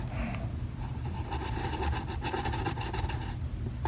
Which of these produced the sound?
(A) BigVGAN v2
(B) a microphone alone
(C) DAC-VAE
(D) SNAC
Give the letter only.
B